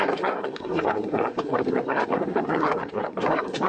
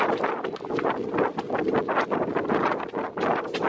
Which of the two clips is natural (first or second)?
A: second